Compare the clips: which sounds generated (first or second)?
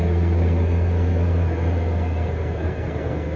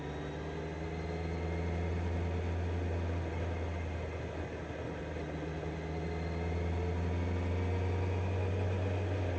first